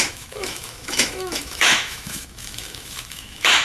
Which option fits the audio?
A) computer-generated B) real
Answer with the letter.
A